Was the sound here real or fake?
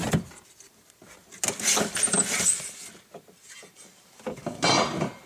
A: real